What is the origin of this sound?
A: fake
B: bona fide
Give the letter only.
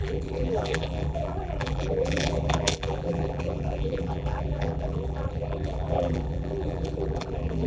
A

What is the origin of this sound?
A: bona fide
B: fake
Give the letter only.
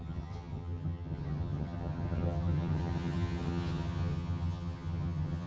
B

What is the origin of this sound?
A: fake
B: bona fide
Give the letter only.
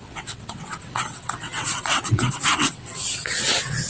A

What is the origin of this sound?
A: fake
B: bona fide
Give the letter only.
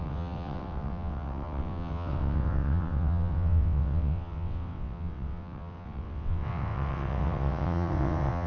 A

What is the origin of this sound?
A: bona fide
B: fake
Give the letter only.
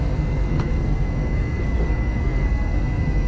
B